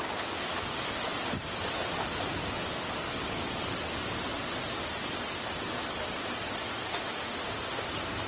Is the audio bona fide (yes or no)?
yes